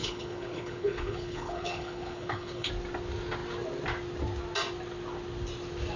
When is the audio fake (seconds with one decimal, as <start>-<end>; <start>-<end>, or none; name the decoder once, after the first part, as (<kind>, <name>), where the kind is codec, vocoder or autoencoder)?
0.0-2.7 (codec, HILCodec)

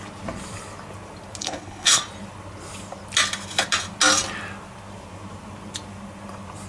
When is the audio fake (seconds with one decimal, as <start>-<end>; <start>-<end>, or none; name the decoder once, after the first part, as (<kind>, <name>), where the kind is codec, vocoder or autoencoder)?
1.4-2.0 (codec, HILCodec)

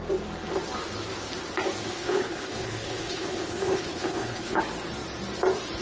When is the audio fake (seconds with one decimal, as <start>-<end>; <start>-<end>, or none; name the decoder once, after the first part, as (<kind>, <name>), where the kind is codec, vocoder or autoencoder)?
1.8-4.6 (codec, HILCodec)

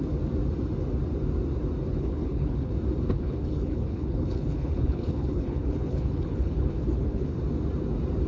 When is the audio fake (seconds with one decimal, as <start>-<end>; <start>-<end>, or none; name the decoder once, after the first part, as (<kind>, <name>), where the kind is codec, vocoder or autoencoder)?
1.9-2.7 (codec, HILCodec); 3.1-7.4

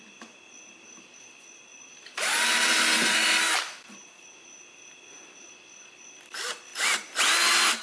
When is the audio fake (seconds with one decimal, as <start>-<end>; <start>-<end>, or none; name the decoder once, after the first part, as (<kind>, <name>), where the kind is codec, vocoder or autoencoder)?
none

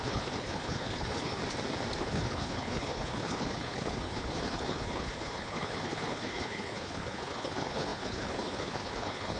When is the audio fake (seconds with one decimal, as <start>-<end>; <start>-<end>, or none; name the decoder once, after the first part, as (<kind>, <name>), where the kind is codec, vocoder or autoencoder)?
0.0-1.4 (codec, HILCodec); 2.0-9.4

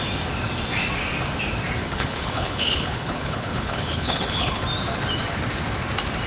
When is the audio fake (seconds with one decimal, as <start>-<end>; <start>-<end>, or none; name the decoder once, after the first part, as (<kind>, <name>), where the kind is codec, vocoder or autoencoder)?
1.8-4.6 (codec, HILCodec)

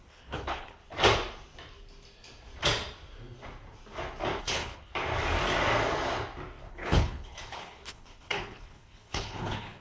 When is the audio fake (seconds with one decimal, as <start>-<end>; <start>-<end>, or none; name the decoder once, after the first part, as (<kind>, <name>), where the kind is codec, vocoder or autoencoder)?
0.0-0.8 (codec, HILCodec); 4.4-4.9; 6.7-9.8